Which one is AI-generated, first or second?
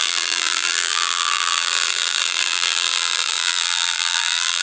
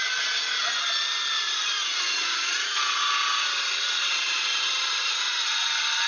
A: first